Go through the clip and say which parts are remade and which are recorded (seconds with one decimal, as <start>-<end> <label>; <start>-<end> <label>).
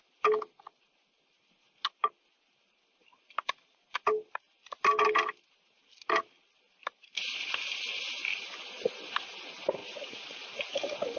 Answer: 0.0-11.2 recorded